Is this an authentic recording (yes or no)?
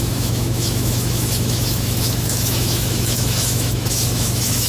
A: no